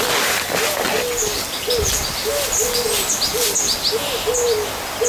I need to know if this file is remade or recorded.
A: recorded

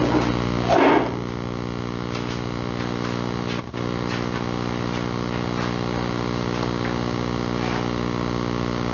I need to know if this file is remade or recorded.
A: recorded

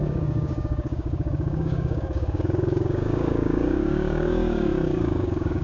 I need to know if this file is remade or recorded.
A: remade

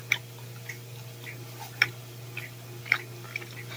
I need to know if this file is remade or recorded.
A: recorded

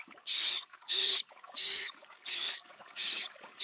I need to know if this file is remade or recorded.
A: remade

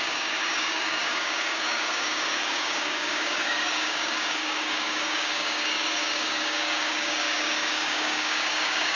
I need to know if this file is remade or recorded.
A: remade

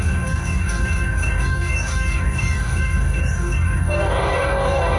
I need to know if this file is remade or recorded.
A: remade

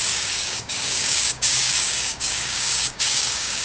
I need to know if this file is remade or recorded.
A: remade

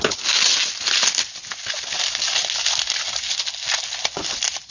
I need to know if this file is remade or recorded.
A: recorded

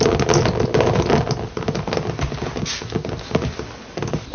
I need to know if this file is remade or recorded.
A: recorded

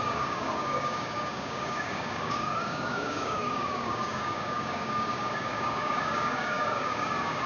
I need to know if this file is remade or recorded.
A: remade